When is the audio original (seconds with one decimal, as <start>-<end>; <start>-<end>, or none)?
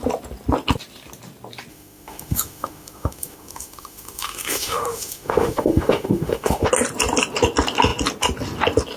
0.0-1.7; 6.7-9.0